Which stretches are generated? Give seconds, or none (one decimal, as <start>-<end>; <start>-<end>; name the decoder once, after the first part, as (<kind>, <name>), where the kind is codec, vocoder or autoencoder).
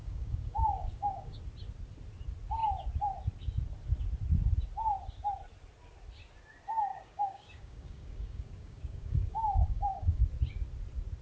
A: 0.0-1.4 (codec, DAC); 6.9-10.2